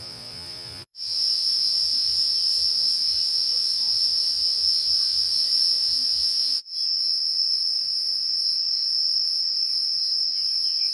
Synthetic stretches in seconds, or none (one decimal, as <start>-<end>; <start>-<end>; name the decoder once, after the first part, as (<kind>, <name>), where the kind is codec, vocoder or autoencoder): 0.0-10.9 (vocoder, Vocos)